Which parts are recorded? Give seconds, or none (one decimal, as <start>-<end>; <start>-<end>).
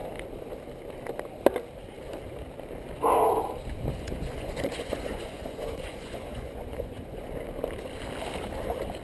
0.0-3.7; 7.3-9.0